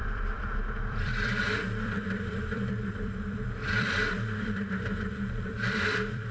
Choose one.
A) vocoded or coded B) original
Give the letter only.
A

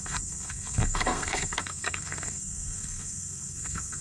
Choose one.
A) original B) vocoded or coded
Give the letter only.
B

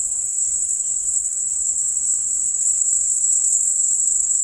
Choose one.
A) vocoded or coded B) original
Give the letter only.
A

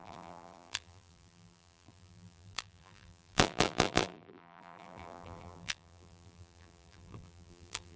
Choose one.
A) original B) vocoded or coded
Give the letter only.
B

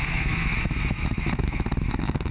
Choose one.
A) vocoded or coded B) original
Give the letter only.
A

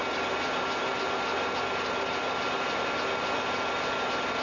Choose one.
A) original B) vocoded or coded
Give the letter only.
A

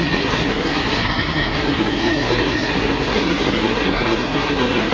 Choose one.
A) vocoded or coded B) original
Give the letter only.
A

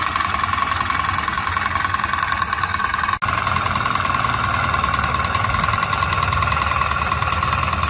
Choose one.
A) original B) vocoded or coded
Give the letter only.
A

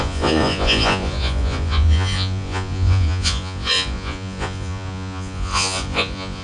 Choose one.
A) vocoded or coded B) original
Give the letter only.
A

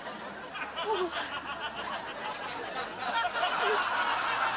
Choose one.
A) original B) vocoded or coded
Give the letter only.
A